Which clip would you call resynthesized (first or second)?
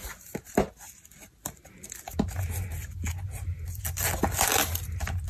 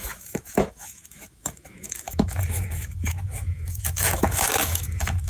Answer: second